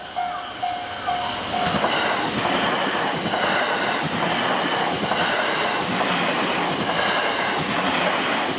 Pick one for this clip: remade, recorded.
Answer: recorded